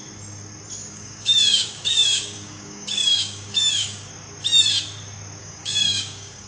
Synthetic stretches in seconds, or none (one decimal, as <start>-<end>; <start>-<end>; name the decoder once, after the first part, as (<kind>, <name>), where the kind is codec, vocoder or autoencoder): 0.8-4.1 (codec, DAC); 5.4-6.5